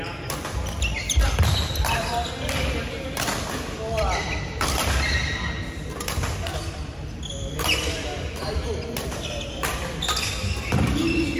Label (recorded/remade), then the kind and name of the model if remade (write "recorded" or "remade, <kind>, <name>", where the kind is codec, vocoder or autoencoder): recorded